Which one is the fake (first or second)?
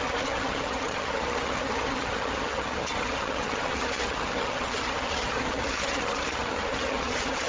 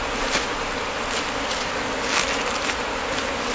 first